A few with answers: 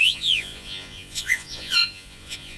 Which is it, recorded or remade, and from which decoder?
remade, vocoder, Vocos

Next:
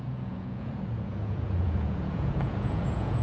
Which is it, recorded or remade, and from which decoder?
remade, vocoder, Vocos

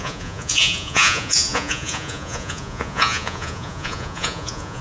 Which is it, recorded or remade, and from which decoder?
remade, vocoder, Vocos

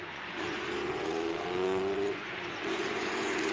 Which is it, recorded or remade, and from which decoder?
remade, vocoder, Vocos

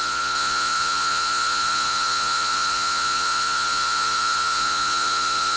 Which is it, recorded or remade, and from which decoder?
remade, vocoder, Vocos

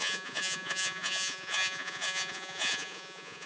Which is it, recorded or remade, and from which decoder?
remade, vocoder, Vocos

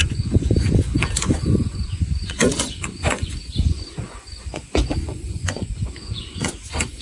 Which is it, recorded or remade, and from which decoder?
remade, vocoder, Vocos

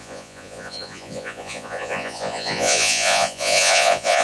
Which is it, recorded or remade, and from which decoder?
remade, vocoder, Vocos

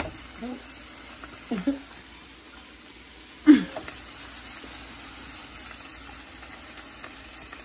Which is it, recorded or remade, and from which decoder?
recorded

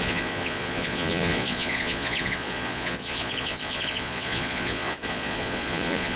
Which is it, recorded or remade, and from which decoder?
remade, vocoder, Vocos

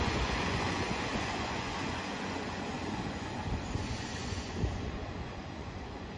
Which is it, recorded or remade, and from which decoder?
remade, vocoder, Vocos